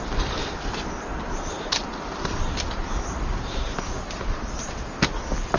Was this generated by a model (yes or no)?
no